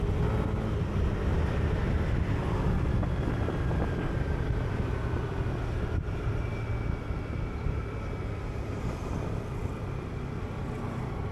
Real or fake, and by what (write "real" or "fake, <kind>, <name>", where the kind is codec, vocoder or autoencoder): real